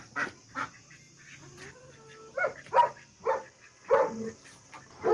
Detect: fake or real real